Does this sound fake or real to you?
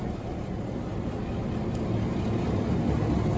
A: real